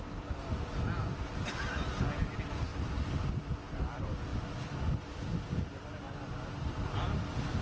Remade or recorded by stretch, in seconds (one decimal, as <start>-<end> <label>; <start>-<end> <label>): 0.0-7.6 recorded